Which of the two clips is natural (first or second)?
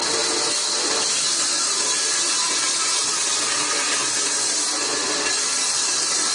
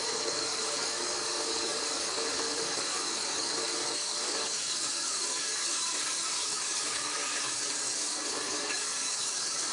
first